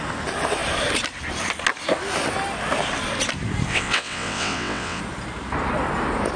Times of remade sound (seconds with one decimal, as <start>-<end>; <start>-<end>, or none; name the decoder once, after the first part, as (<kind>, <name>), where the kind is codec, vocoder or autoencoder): 3.7-5.0 (vocoder, WaveNeXt)